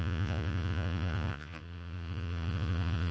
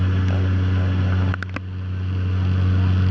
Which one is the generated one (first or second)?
first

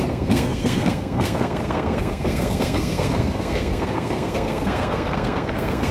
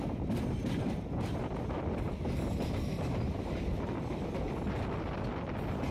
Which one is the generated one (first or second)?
first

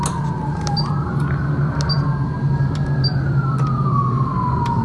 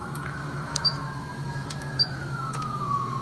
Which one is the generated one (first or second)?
second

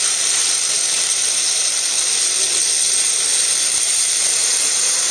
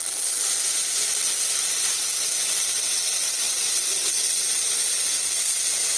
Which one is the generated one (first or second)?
first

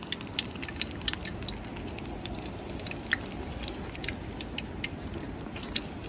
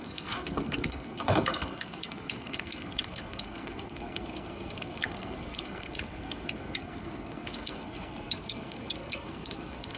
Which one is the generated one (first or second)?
second